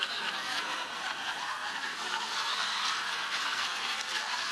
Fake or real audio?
fake